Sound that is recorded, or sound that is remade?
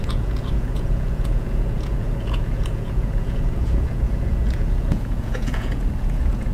remade